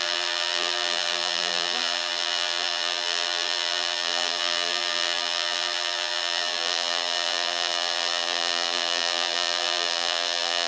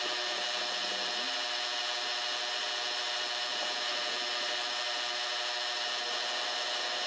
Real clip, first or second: second